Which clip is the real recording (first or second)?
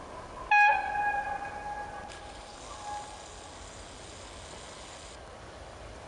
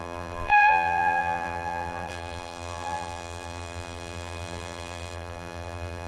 first